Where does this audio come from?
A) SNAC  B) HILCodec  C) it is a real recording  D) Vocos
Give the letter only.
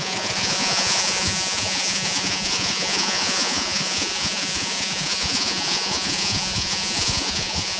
D